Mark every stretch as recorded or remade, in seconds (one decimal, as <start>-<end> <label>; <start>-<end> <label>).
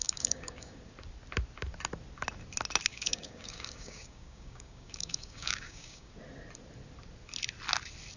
0.0-0.8 remade; 0.8-2.9 recorded; 2.9-6.1 remade; 6.1-8.2 recorded